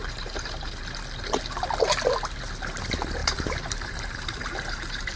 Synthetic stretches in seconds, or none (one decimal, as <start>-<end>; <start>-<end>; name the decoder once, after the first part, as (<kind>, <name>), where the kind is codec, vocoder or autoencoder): 0.0-0.8 (vocoder, BigVGAN v2); 3.2-5.2